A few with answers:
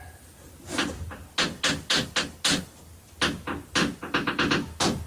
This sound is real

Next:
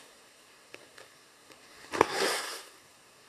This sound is fake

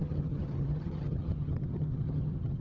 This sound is fake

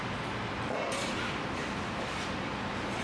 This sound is real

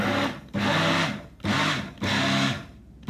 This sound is real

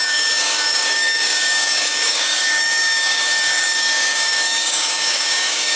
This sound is fake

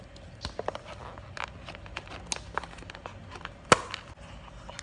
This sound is real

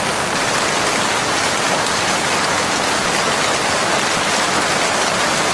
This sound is real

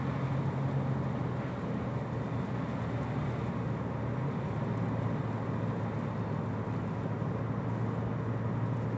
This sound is real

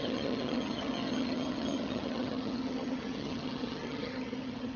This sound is fake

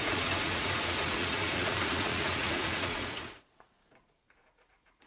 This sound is fake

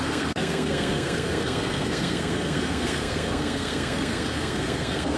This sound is fake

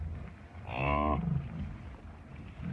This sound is real